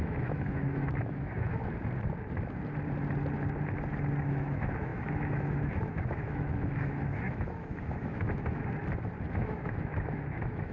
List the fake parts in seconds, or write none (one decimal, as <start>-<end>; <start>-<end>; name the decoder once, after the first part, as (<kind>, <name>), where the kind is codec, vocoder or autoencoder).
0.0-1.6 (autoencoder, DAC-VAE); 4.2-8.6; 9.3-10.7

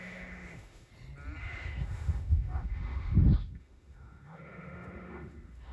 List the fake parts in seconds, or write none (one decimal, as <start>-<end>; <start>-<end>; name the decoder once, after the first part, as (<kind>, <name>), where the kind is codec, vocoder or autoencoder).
0.0-0.9 (autoencoder, DAC-VAE); 1.4-5.7

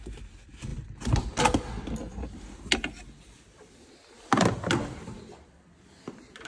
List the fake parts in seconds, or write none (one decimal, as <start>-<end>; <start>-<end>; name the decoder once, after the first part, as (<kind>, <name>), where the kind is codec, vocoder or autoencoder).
none